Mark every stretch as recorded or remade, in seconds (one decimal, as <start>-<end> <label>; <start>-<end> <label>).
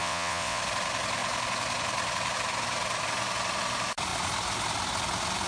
0.0-0.6 remade; 0.6-5.5 recorded